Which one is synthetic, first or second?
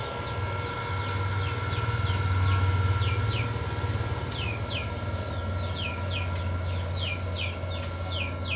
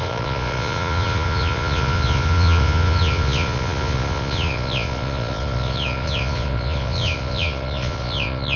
second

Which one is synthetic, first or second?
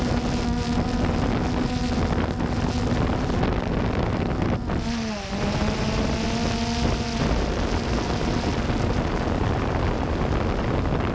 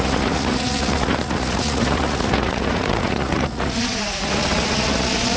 second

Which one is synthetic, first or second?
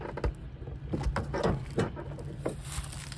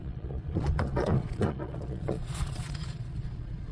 second